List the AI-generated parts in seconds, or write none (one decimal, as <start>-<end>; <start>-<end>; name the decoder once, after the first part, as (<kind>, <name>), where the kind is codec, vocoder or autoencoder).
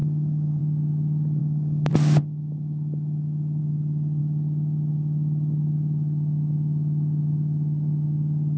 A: 0.0-0.6 (codec, DAC); 1.4-1.9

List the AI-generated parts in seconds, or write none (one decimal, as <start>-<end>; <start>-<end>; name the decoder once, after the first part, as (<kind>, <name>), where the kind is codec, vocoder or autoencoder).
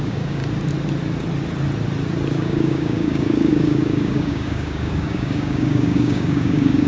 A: 0.0-0.4 (codec, DAC); 2.3-6.9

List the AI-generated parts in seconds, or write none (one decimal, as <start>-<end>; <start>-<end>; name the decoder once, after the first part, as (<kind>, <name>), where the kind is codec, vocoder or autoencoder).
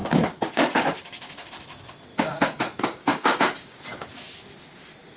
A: 0.0-1.5 (codec, DAC); 2.1-2.6; 3.0-3.8